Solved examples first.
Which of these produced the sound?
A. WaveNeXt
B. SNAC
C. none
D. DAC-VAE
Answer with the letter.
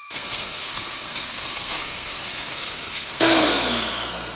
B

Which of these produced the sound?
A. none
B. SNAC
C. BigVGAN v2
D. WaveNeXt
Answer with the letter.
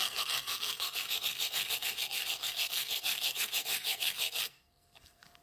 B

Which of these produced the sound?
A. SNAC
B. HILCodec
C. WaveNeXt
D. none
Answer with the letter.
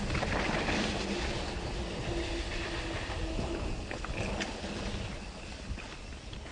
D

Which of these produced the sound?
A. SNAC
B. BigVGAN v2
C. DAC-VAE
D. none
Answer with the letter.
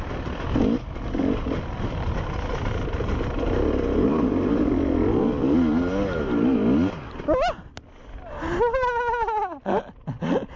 D